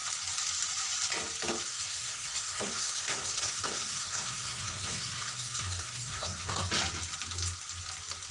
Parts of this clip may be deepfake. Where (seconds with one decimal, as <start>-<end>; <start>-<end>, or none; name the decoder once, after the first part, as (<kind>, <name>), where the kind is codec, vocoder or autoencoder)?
1.7-6.7 (codec, SNAC)